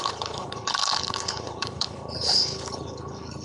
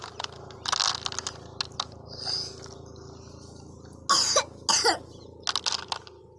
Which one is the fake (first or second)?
first